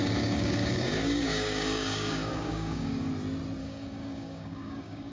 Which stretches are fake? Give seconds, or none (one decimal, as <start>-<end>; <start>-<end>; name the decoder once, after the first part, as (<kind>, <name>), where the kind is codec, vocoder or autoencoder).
0.0-3.1 (codec, DAC); 3.6-5.1